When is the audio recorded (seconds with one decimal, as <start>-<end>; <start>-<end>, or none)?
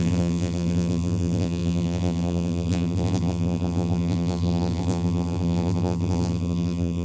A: none